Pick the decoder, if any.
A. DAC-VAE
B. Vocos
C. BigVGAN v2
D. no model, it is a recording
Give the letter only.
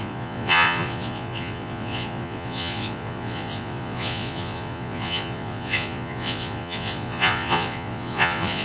B